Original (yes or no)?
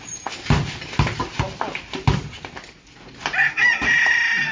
yes